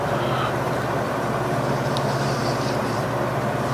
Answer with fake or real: fake